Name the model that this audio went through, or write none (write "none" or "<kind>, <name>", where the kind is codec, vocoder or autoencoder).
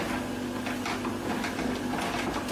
none